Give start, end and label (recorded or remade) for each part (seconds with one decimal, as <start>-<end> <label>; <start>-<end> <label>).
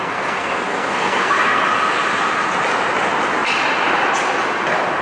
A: 0.0-1.7 remade; 1.7-5.0 recorded